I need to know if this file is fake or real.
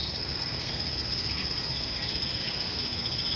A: fake